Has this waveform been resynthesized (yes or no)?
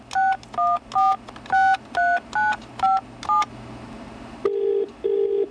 no